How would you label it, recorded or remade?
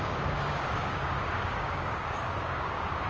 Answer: remade